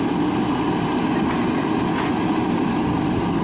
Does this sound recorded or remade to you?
recorded